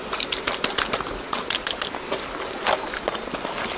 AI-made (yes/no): no